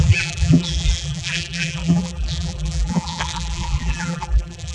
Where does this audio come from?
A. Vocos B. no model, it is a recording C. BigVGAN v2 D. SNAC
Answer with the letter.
C